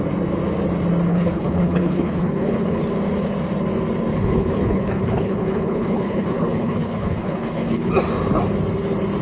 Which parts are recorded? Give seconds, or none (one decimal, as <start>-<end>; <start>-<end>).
0.0-1.1; 2.8-4.1; 7.9-9.2

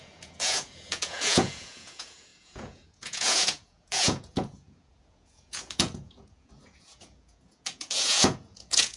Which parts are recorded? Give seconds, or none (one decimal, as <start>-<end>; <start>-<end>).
none

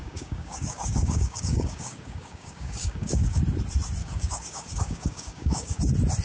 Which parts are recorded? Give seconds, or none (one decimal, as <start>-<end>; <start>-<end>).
3.4-4.0; 5.8-6.2

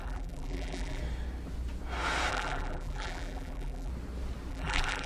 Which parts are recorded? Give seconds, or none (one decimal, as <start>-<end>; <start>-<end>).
1.0-2.3; 3.9-4.5

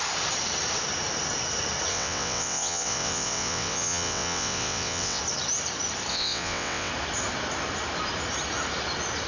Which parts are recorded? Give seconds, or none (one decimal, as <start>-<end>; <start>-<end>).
0.0-1.9; 5.2-6.1; 6.9-9.3

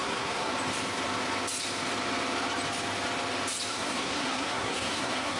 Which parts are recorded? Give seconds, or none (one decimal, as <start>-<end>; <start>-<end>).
0.5-3.7

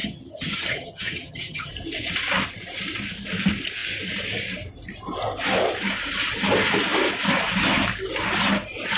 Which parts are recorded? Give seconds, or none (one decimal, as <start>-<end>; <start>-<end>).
1.7-9.0

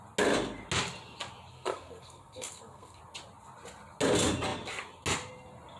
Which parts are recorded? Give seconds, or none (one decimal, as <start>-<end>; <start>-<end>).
0.0-1.5; 3.0-5.8